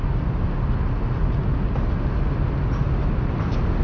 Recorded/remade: recorded